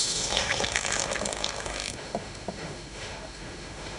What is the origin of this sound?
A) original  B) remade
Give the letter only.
B